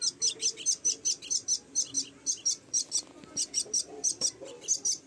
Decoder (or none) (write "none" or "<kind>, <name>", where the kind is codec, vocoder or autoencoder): none